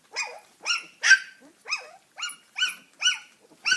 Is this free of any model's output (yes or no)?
yes